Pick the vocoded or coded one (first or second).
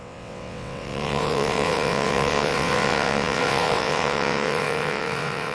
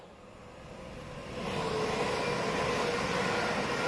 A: first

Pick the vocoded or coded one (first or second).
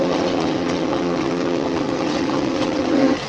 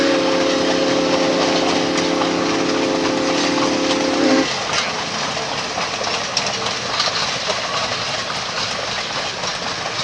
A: first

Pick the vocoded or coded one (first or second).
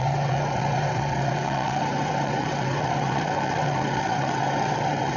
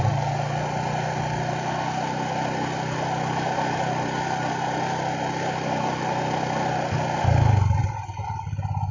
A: first